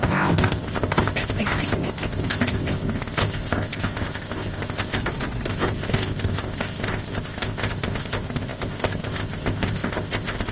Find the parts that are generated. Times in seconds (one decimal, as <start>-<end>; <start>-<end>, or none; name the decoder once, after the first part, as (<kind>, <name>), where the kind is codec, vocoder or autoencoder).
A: 0.0-5.0 (codec, ZipCodec); 5.5-10.5